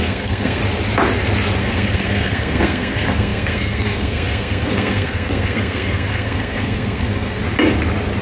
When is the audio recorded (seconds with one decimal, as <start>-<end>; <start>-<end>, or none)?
0.6-1.6; 7.4-8.2